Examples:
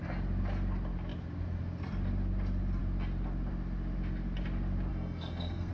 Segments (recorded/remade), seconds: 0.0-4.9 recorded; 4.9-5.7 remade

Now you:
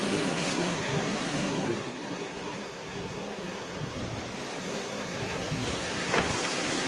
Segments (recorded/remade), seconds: 0.0-4.0 remade; 4.0-4.6 recorded; 4.6-6.9 remade

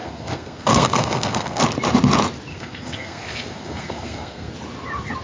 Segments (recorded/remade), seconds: 0.0-1.6 remade; 1.6-2.5 recorded; 2.5-4.5 remade; 4.5-5.2 recorded